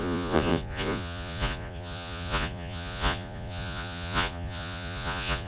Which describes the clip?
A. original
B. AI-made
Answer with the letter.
B